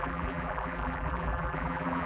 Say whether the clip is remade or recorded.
remade